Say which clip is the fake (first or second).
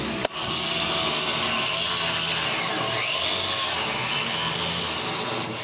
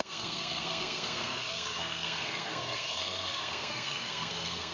second